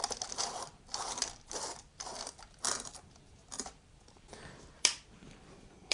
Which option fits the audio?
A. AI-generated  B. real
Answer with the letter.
A